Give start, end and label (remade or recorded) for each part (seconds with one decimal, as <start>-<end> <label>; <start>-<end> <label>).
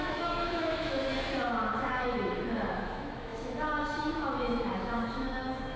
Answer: 0.0-1.1 remade; 1.1-1.7 recorded; 1.7-5.8 remade